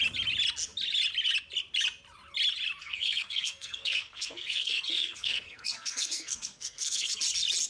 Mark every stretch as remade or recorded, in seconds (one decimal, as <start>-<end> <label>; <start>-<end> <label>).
0.0-2.8 recorded; 2.8-7.2 remade; 7.2-7.7 recorded